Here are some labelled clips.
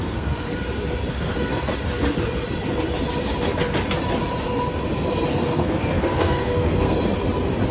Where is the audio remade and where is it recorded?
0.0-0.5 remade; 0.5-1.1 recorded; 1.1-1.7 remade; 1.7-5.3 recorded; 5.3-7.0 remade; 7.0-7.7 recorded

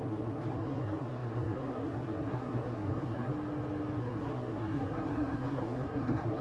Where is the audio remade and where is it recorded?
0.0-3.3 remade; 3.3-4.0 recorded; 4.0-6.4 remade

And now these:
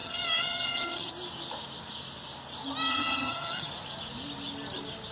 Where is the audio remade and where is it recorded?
0.0-1.1 remade; 1.1-2.9 recorded; 2.9-3.7 remade; 3.7-5.1 recorded

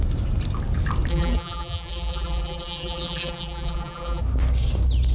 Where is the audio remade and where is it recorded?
0.0-1.1 recorded; 1.1-4.2 remade; 4.2-5.1 recorded